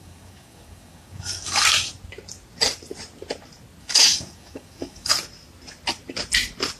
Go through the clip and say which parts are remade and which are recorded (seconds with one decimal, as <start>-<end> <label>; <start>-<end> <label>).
0.0-1.9 remade; 1.9-3.8 recorded; 3.8-5.1 remade; 5.1-6.8 recorded